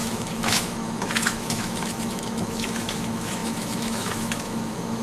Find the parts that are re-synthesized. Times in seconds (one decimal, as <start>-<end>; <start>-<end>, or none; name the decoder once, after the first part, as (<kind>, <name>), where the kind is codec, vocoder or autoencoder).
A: 0.0-5.0 (autoencoder, DAC-VAE)